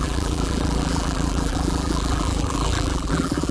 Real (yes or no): no